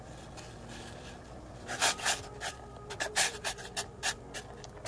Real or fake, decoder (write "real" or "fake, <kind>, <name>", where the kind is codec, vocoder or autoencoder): real